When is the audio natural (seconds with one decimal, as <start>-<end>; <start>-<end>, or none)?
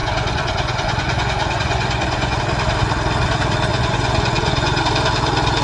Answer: 2.4-3.7; 4.8-5.6